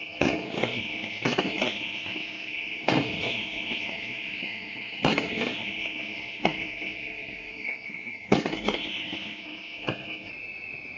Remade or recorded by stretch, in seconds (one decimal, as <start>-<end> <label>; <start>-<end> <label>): 0.0-10.3 remade; 10.3-11.0 recorded